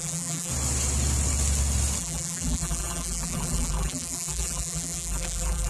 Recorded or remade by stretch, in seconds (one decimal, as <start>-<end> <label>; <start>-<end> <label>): 0.0-0.5 remade; 0.5-2.0 recorded; 2.0-5.7 remade